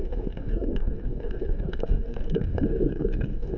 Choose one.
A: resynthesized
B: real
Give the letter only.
A